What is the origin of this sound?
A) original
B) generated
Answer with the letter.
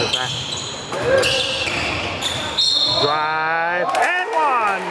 A